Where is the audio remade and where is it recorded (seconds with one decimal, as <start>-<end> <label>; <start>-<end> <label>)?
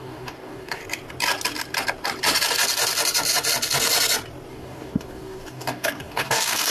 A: 0.0-0.8 remade; 0.8-4.5 recorded; 4.5-6.7 remade